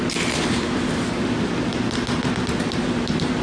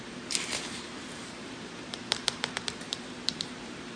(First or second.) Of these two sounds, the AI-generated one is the second